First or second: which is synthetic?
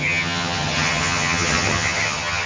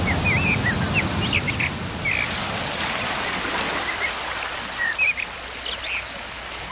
first